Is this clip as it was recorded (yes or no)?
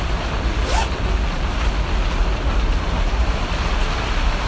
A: yes